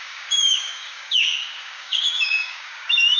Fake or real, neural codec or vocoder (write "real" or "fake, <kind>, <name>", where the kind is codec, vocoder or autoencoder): fake, codec, DAC